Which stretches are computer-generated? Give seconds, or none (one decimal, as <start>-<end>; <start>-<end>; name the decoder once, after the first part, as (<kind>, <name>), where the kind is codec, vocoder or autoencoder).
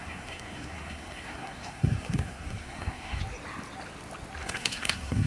0.0-3.2 (codec, SNAC); 4.4-5.3